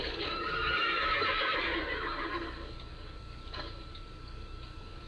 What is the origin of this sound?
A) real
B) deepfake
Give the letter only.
B